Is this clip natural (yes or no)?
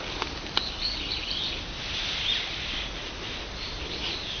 yes